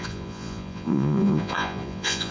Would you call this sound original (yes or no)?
no